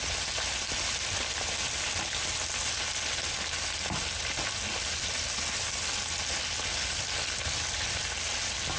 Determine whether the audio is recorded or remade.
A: recorded